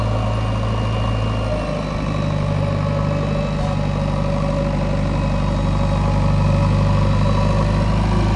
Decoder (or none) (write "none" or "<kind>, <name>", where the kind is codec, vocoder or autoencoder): none